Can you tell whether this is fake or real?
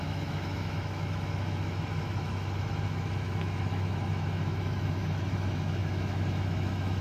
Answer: fake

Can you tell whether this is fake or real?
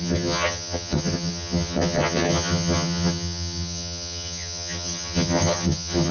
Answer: fake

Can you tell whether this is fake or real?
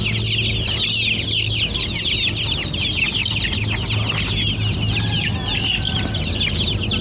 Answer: real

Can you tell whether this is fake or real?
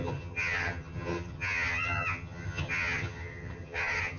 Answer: fake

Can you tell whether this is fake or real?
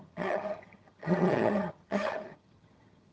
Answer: fake